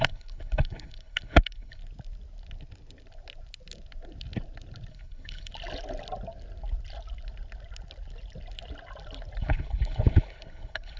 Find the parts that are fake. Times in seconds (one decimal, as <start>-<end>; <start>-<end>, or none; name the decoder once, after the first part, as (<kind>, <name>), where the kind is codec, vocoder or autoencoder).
0.0-1.8 (codec, HILCodec); 4.9-5.5; 9.4-11.0